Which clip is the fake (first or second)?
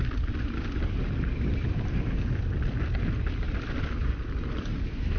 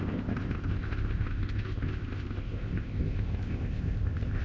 second